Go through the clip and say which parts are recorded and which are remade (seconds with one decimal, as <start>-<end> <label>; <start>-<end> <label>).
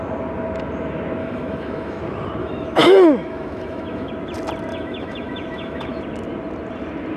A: 0.0-1.2 recorded; 1.2-2.0 remade; 2.0-2.4 recorded; 2.4-4.1 remade; 4.1-4.7 recorded; 4.7-6.0 remade; 6.0-7.2 recorded